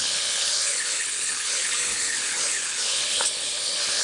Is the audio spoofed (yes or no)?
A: yes